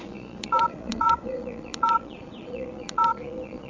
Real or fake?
fake